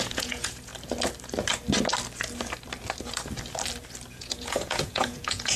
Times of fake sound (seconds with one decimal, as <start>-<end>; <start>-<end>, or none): 0.0-0.7; 4.1-5.6